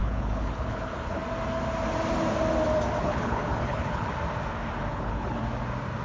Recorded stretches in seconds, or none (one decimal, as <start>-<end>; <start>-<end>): 1.2-3.0; 4.1-4.9; 5.4-6.0